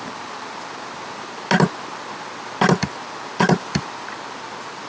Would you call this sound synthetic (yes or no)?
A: no